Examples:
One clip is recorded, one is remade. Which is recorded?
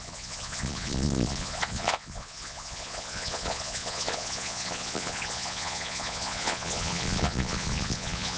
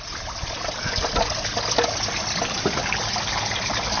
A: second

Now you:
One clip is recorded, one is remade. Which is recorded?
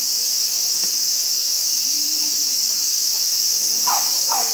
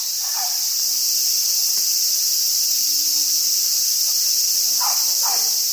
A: second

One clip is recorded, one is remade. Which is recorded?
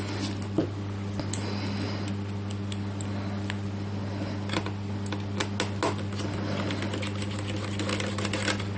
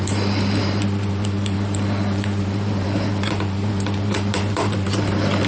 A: first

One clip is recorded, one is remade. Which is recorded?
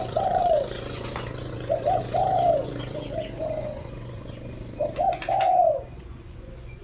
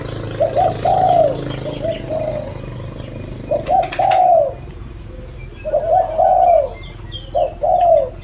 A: second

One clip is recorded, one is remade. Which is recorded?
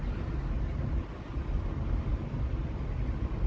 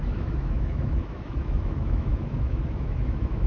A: first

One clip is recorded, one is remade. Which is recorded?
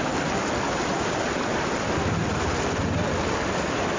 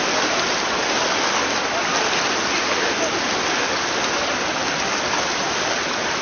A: second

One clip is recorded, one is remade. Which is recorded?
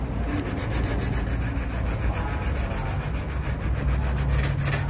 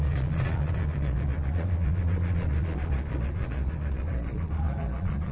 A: first